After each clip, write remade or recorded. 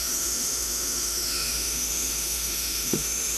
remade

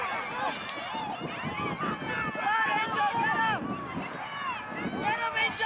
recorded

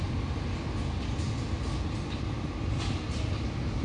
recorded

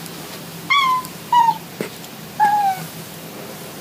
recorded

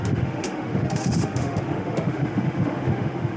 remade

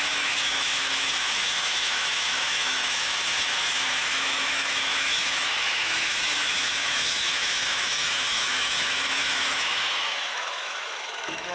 remade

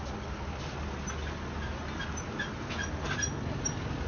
recorded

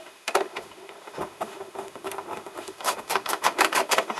remade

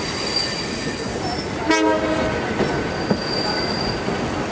recorded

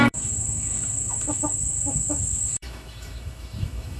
remade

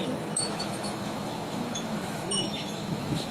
remade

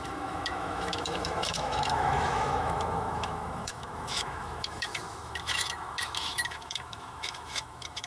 remade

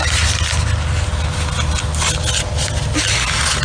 recorded